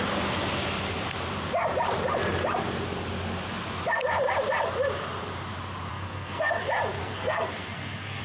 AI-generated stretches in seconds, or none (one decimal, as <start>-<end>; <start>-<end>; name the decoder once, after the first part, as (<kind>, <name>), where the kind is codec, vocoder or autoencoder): 5.9-6.6 (codec, SNAC); 7.0-8.2